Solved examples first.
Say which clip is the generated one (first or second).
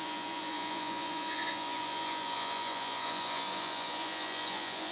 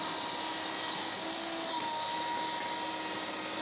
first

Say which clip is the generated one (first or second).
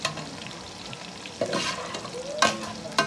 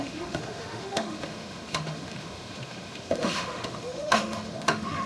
second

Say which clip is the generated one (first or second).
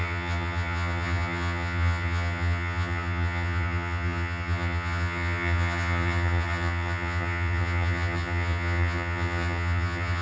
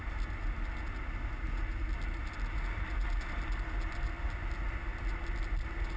first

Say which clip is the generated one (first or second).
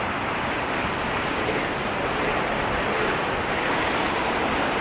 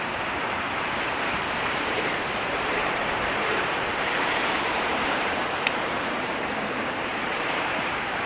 second